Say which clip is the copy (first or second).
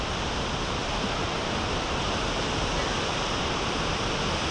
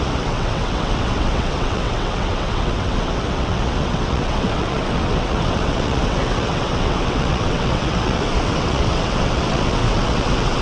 second